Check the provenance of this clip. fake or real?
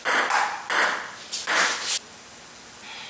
real